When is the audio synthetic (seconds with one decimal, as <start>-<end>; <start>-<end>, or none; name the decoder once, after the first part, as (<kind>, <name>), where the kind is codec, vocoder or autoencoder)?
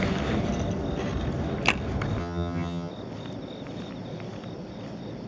2.2-2.9 (vocoder, HiFi-GAN)